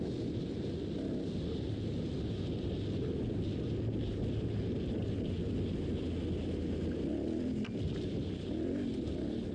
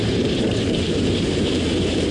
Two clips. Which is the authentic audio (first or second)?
first